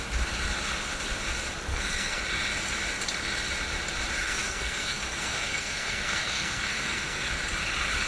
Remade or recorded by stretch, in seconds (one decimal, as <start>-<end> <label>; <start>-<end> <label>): 0.0-1.7 recorded; 1.7-2.2 remade; 2.2-4.2 recorded; 4.2-7.3 remade; 7.3-8.1 recorded